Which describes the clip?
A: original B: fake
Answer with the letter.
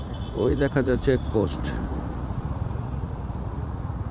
B